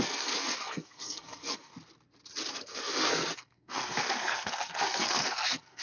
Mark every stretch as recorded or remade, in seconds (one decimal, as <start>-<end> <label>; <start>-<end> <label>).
0.0-1.7 remade; 1.7-2.5 recorded; 2.5-5.8 remade